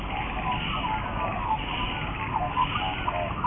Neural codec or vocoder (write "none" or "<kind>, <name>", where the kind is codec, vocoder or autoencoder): none